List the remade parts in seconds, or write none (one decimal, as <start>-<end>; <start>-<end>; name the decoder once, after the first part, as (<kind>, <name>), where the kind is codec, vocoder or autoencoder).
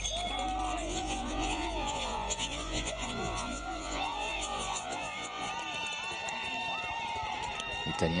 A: 0.8-5.5 (vocoder, Vocos)